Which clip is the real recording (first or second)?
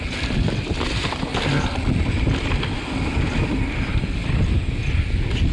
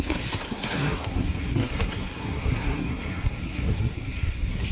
first